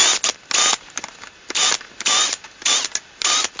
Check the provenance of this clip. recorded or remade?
recorded